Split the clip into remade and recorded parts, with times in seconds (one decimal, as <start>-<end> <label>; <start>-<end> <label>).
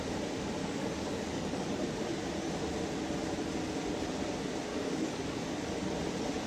0.0-0.6 recorded; 0.6-1.8 remade; 1.8-4.7 recorded; 4.7-5.4 remade; 5.4-6.5 recorded